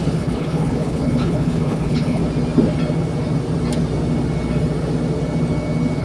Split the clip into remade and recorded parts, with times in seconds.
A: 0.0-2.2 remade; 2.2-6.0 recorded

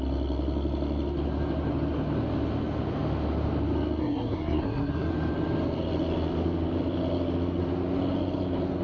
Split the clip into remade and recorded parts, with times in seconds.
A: 0.0-4.0 recorded; 4.0-5.1 remade; 5.1-8.8 recorded

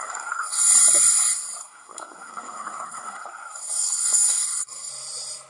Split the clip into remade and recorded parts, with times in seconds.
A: 0.0-0.6 remade; 0.6-1.6 recorded; 1.6-4.9 remade; 4.9-5.5 recorded